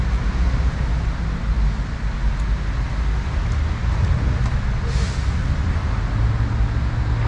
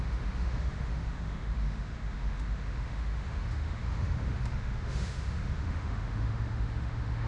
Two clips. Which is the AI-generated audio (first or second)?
second